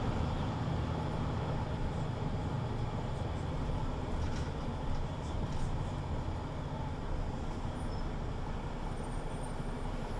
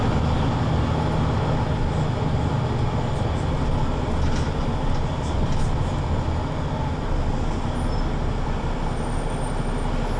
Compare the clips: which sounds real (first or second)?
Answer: second